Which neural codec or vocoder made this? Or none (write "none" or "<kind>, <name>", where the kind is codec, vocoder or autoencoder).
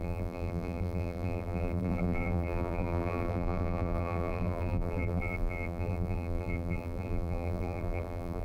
vocoder, BigVGAN v2